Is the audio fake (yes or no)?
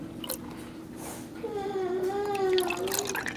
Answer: no